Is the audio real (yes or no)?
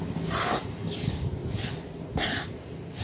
yes